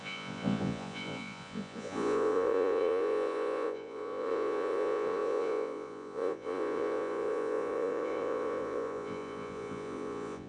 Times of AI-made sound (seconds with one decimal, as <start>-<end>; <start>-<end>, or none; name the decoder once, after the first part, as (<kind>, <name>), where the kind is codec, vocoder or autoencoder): 0.0-10.5 (vocoder, Vocos)